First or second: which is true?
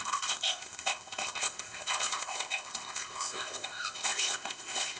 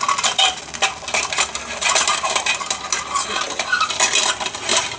second